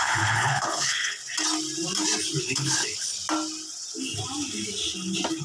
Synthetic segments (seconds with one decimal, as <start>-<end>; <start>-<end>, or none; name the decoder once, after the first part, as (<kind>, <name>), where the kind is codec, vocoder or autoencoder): 0.0-1.2 (codec, HILCodec); 2.4-3.2